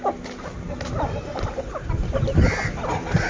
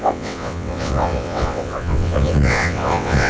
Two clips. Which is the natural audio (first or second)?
first